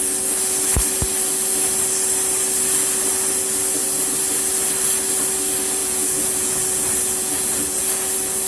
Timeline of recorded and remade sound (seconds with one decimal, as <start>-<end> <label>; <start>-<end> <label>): 0.0-5.8 recorded; 5.8-7.8 remade; 7.8-8.5 recorded